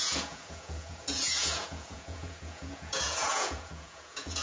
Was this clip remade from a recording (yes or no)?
yes